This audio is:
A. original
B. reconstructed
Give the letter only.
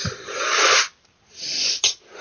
A